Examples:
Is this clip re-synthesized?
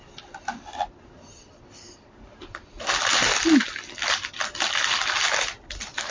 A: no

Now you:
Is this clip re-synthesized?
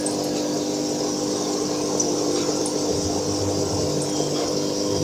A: no